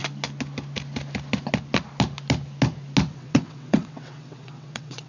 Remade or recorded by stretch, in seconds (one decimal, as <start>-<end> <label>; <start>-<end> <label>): 0.0-3.1 recorded; 3.1-5.1 remade

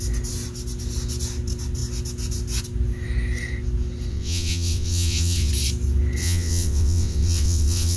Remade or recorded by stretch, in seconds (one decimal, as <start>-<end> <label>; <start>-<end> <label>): 0.0-4.1 recorded; 4.1-5.5 remade; 5.5-6.2 recorded; 6.2-8.0 remade

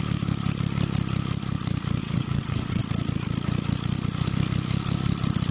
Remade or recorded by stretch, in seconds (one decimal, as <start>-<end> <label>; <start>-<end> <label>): 0.0-2.0 recorded; 2.0-2.8 remade; 2.8-5.5 recorded

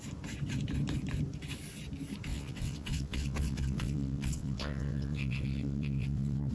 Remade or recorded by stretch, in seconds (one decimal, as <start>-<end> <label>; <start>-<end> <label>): 0.0-2.3 recorded; 2.3-6.5 remade